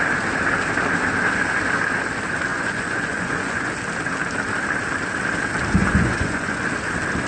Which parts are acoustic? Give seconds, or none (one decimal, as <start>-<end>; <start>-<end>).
0.0-2.5; 3.7-5.8; 6.6-7.3

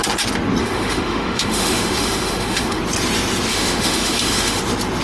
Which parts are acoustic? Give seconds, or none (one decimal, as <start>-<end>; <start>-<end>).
0.0-0.6; 2.8-3.5; 4.6-5.0